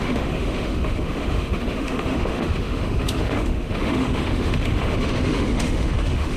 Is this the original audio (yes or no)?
no